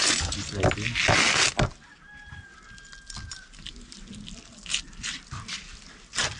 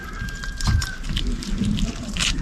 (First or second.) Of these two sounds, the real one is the first